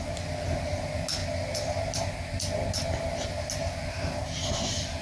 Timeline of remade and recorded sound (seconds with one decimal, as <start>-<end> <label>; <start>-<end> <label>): 0.0-5.0 recorded